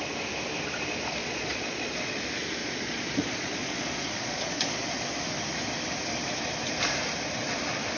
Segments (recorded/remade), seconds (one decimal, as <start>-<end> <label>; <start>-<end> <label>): 0.0-1.2 recorded; 1.2-2.2 remade; 2.2-2.6 recorded; 2.6-5.0 remade; 5.0-8.0 recorded